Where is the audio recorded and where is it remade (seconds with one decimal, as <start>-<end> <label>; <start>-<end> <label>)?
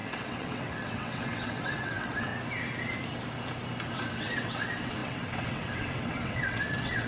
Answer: 0.0-2.3 remade; 2.3-3.9 recorded; 3.9-7.1 remade